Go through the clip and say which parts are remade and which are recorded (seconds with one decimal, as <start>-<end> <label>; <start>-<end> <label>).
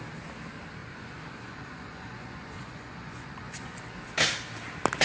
0.0-0.8 recorded; 0.8-3.8 remade; 3.8-5.0 recorded